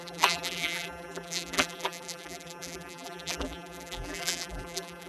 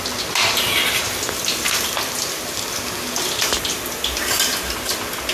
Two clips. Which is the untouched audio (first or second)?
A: second